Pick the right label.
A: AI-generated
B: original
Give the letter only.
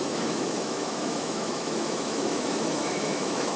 A